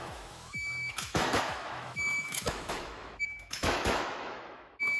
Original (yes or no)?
no